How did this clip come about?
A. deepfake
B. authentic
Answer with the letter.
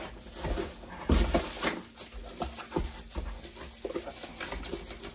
B